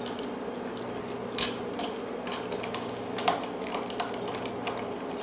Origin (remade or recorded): recorded